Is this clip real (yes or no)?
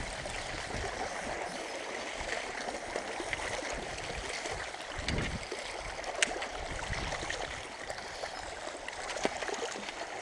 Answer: yes